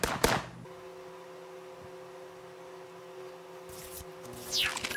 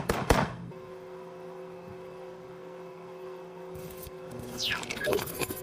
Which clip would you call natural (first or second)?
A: first